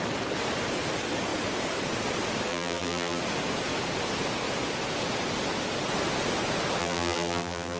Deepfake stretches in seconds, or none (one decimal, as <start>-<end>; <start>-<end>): 2.5-3.2; 6.8-7.8